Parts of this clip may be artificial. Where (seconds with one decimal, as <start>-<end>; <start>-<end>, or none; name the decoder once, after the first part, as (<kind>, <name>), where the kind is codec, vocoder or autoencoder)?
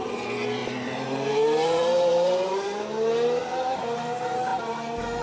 0.6-2.8 (vocoder, BigVGAN v2); 3.4-4.0; 4.5-5.2